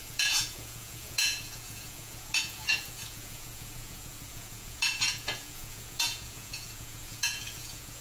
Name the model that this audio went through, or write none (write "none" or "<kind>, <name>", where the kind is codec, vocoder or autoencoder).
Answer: vocoder, Vocos